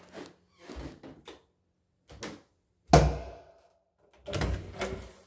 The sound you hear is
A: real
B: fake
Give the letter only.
A